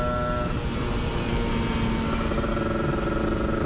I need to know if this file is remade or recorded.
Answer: recorded